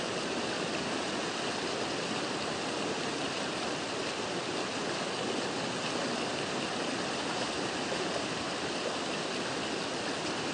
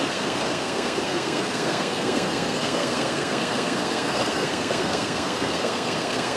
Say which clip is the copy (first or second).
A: second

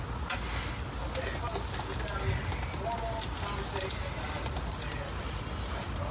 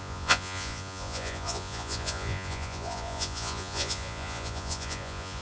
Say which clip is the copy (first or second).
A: second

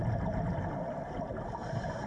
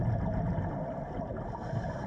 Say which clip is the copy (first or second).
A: first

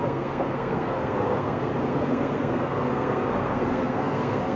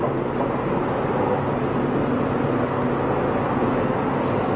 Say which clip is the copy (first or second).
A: first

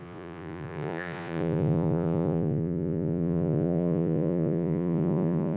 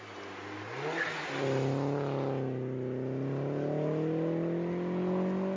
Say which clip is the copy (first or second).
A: first